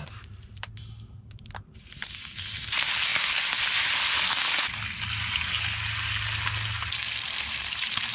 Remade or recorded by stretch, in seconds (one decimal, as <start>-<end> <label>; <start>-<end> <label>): 0.0-3.1 remade; 3.1-7.4 recorded; 7.4-8.1 remade